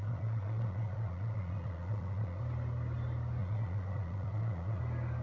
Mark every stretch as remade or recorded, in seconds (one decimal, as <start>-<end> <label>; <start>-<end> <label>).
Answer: 0.0-2.4 remade; 2.4-3.4 recorded; 3.4-4.8 remade; 4.8-5.2 recorded